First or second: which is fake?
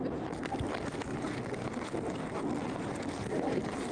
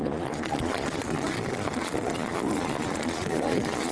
second